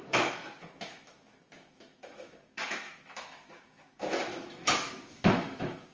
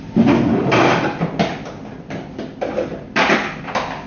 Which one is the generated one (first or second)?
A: first